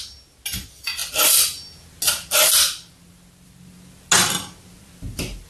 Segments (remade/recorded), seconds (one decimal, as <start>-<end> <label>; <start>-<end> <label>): 0.0-5.5 recorded